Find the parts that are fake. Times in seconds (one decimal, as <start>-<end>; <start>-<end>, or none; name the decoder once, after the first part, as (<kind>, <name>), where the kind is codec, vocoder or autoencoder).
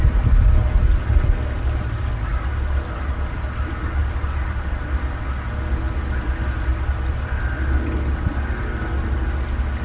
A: none